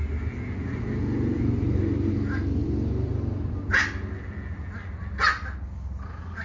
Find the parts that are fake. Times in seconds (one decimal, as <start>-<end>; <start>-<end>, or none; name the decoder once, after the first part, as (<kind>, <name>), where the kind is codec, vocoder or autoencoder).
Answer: 2.6-3.1 (vocoder, BigVGAN v2)

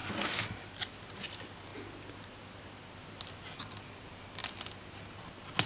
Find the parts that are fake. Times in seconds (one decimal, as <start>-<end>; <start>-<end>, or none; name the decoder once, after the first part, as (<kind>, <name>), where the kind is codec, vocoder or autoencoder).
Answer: none

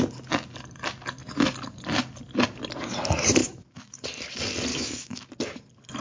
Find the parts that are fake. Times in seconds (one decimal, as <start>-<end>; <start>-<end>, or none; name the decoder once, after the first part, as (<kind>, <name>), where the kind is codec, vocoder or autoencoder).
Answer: 3.4-4.0 (autoencoder, DAC-VAE); 4.7-5.3

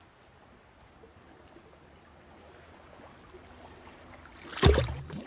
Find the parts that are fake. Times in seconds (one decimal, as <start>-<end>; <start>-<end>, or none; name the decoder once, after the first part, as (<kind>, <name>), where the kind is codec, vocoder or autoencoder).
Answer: 3.4-4.0 (vocoder, BigVGAN v2); 4.5-5.3

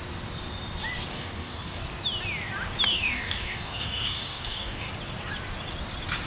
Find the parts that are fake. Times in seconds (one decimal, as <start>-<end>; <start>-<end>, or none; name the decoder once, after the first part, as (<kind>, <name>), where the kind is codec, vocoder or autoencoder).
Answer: 1.1-1.8 (codec, DAC); 2.9-4.9

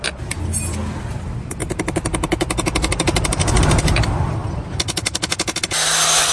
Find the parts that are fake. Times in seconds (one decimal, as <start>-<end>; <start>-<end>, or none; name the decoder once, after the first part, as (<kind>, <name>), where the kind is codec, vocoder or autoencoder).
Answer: none

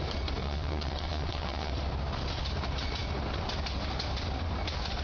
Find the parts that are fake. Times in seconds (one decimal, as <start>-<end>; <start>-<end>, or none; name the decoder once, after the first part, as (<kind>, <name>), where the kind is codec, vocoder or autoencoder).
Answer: 0.4-1.7 (vocoder, WaveNeXt)